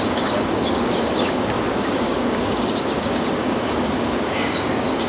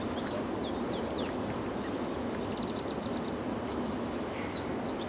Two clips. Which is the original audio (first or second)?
second